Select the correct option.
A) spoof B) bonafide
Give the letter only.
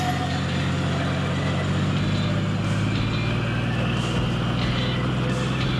B